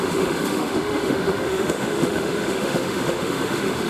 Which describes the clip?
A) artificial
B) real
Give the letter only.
A